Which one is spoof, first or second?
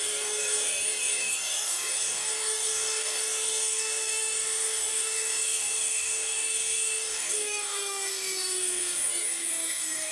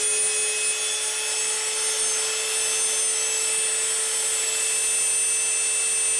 first